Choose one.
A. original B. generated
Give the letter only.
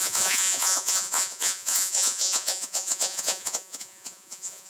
B